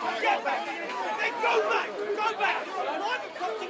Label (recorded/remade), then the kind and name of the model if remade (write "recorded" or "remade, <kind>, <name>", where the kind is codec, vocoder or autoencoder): recorded